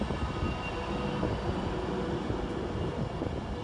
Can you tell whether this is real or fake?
real